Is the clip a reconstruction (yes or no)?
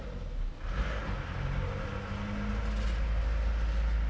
no